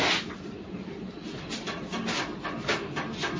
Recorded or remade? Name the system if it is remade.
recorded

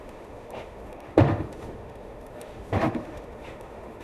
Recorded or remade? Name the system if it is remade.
remade, autoencoder, DAC-VAE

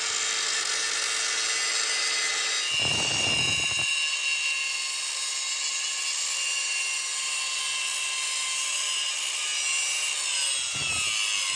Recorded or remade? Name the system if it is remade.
recorded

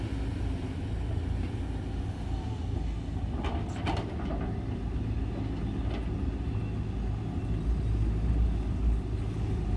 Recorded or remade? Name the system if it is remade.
recorded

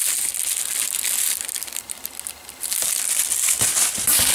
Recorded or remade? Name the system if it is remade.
recorded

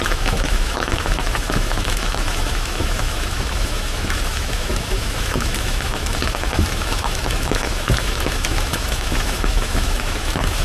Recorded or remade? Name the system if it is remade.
remade, autoencoder, DAC-VAE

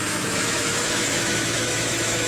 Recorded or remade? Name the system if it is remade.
remade, autoencoder, DAC-VAE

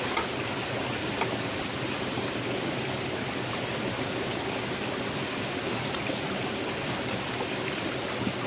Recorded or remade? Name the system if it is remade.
recorded